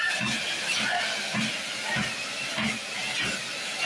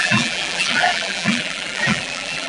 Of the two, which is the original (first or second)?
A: first